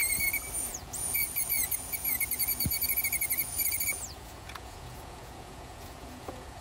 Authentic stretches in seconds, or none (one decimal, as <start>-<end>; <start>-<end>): 0.0-0.6